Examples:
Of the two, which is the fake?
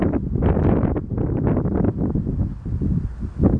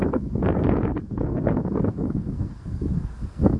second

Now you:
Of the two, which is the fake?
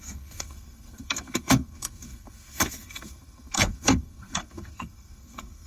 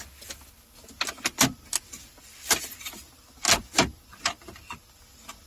first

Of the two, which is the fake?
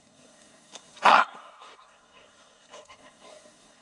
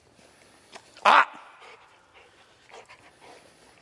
first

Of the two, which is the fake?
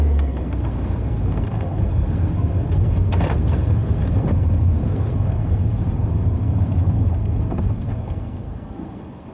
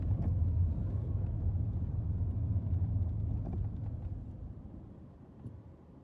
first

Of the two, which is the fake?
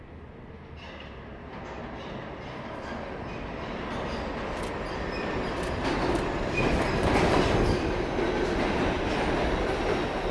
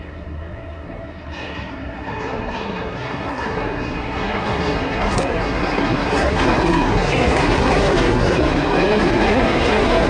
second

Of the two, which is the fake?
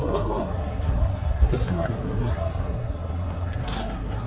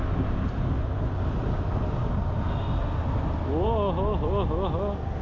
first